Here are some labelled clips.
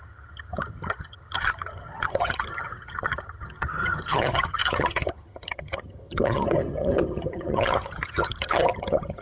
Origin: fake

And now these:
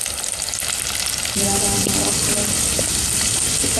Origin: real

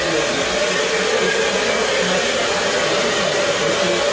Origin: real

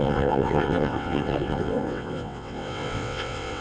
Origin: fake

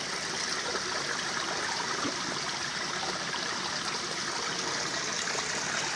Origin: real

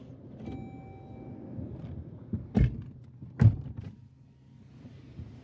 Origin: real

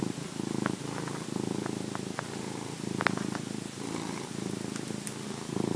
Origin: real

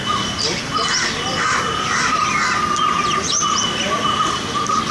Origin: real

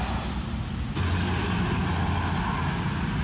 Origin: real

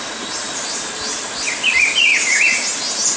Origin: real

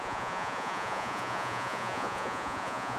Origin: fake